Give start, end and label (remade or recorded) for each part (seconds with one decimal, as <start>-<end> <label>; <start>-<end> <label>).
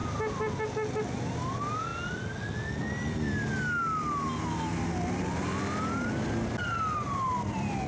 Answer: 0.0-7.9 recorded